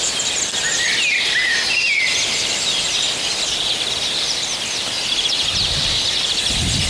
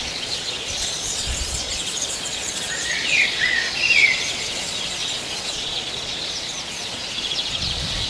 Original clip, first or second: first